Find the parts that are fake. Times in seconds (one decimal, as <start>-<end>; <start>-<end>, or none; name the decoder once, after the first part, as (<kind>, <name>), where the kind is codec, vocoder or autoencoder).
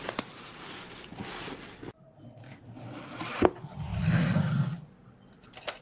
0.0-1.1 (vocoder, BigVGAN v2); 3.2-3.9; 5.3-5.8